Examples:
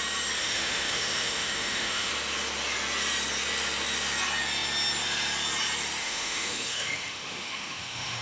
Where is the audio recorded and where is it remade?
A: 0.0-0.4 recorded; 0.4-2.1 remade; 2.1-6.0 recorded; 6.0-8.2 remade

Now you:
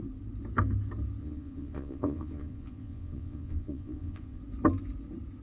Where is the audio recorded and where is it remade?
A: 0.0-1.2 recorded; 1.2-4.4 remade; 4.4-5.4 recorded

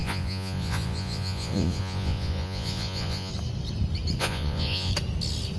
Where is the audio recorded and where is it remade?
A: 0.0-3.3 remade; 3.3-4.2 recorded; 4.2-4.9 remade; 4.9-5.6 recorded

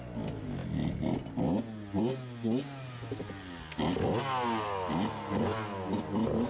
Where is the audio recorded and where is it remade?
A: 0.0-6.5 recorded

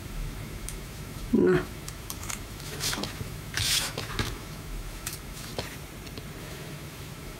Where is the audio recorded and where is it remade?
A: 0.0-5.5 remade; 5.5-6.4 recorded; 6.4-7.4 remade

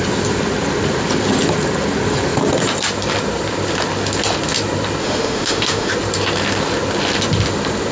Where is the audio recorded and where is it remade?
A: 0.0-5.0 recorded; 5.0-5.9 remade; 5.9-7.9 recorded

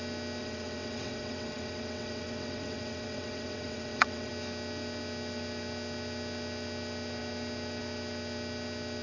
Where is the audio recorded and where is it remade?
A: 0.0-0.4 recorded; 0.4-4.3 remade; 4.3-9.0 recorded